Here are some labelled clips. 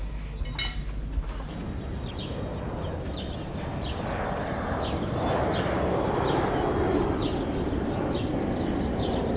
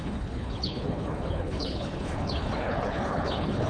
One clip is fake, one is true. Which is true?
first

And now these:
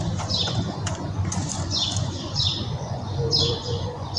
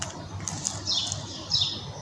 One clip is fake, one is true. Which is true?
second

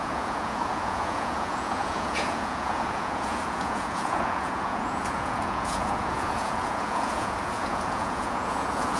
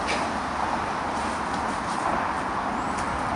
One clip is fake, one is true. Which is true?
second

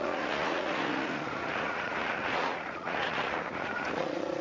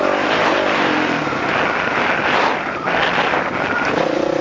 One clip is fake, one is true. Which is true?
second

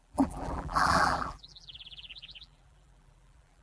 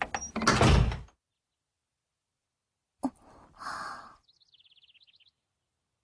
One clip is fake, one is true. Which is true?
second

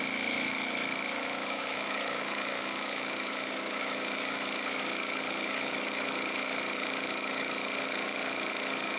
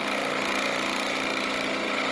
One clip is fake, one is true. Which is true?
second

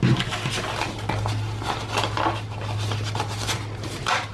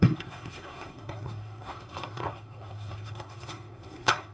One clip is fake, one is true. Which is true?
first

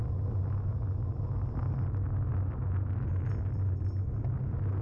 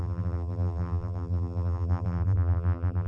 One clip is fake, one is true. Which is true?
first